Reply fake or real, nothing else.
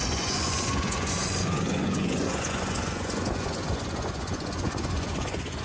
fake